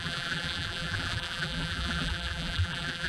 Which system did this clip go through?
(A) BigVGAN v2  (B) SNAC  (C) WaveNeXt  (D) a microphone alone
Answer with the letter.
A